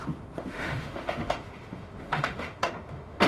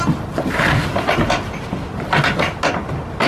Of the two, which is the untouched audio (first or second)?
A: second